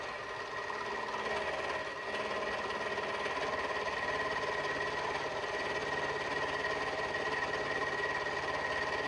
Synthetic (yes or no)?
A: no